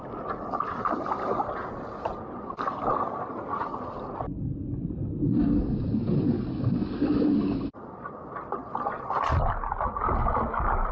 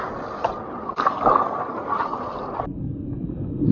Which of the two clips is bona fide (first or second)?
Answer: second